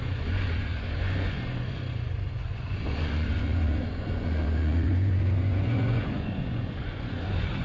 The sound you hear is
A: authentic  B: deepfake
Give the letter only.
B